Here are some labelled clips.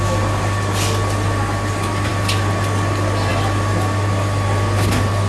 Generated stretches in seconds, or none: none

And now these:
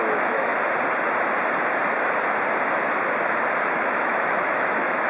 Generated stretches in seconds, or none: 0.0-0.5 (autoencoder, DAC-VAE); 3.6-5.1

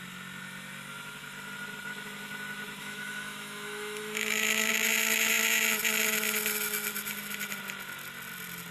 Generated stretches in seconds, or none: 2.8-4.7 (autoencoder, DAC-VAE)